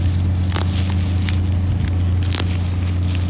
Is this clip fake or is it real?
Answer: real